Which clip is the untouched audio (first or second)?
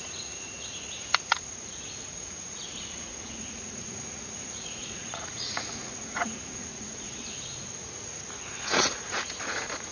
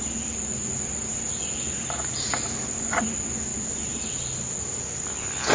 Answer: second